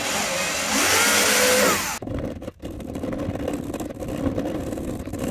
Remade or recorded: recorded